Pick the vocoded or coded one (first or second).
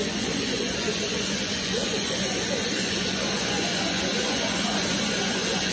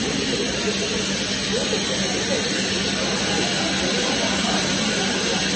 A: first